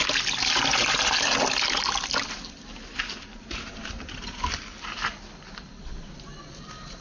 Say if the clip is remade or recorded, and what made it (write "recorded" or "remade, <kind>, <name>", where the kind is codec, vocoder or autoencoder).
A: recorded